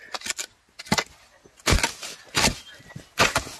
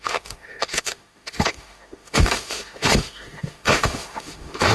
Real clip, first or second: first